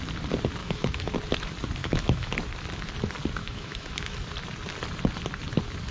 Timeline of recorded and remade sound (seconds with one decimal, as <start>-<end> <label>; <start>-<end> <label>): 0.0-0.6 recorded; 0.6-1.1 remade; 1.1-1.8 recorded; 1.8-2.3 remade; 2.3-3.4 recorded; 3.4-4.2 remade; 4.2-5.9 recorded